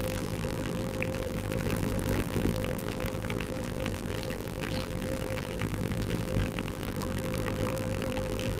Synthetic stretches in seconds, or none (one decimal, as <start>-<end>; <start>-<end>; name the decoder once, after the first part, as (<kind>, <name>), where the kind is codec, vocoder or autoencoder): 0.0-8.6 (vocoder, BigVGAN v2)